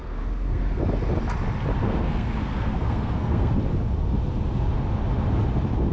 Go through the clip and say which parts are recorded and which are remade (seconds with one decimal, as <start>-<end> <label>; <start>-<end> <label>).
0.0-0.8 remade; 0.8-1.8 recorded; 1.8-3.5 remade; 3.5-5.9 recorded